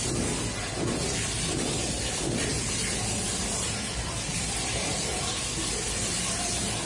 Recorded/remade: recorded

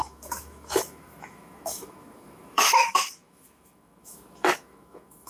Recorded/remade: remade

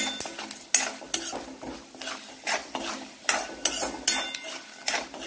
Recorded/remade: recorded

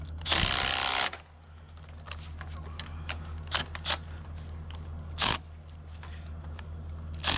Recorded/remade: recorded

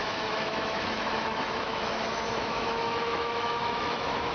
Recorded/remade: remade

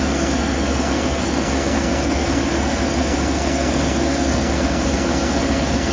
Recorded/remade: remade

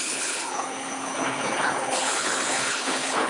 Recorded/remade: remade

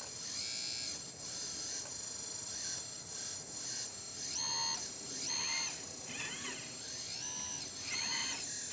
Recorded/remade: recorded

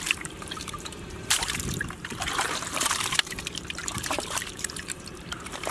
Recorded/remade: remade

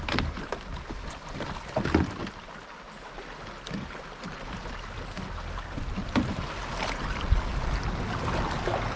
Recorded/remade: recorded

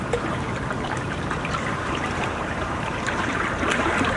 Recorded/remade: remade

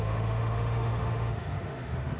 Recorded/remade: remade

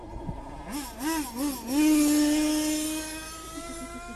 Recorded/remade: recorded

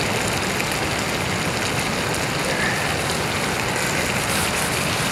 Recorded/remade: recorded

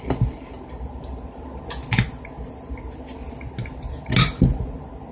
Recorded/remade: recorded